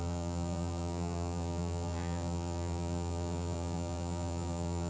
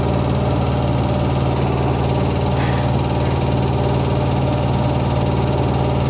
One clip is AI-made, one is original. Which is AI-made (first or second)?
first